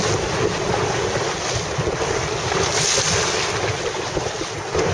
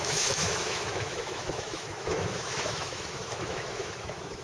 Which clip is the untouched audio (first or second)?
first